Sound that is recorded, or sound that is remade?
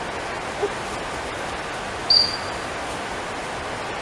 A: recorded